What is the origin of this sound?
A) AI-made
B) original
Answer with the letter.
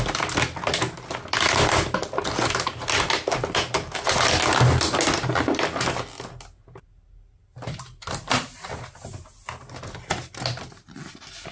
B